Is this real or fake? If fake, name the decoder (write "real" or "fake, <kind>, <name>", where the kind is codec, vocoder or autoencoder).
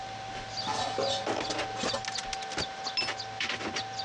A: real